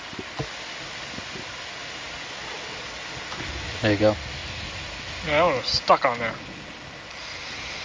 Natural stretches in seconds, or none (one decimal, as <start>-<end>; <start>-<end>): 0.0-7.8